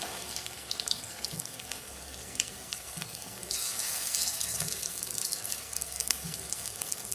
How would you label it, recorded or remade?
remade